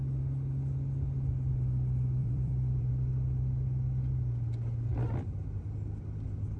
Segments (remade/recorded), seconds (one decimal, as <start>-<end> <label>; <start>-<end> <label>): 0.0-2.2 recorded; 2.2-2.9 remade; 2.9-4.9 recorded; 4.9-5.4 remade; 5.4-6.6 recorded